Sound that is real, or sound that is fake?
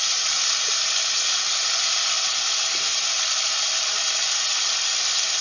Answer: real